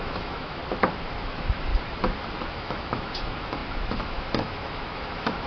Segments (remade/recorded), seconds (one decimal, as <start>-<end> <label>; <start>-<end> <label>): 0.0-0.6 remade; 0.6-1.2 recorded; 1.2-1.7 remade; 1.7-2.5 recorded; 2.5-5.5 remade